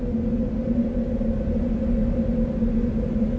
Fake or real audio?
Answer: real